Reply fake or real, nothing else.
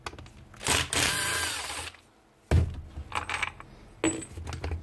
real